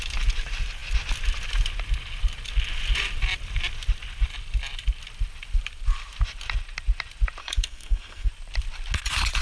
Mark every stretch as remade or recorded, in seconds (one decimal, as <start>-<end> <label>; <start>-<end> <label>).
0.0-7.4 recorded; 7.4-8.3 remade; 8.3-9.4 recorded